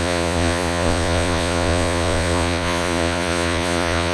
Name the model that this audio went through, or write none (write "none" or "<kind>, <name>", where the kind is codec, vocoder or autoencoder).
vocoder, Vocos